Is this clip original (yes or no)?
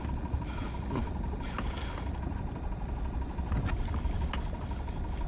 yes